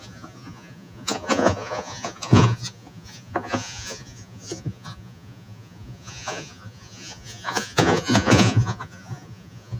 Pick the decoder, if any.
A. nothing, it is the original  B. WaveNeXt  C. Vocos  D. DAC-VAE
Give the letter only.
C